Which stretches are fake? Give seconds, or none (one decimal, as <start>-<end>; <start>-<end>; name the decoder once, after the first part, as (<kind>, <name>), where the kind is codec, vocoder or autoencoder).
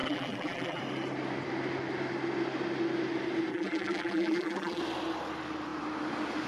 0.0-0.8 (vocoder, BigVGAN v2); 3.5-4.8